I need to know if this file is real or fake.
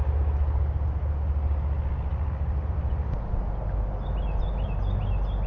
real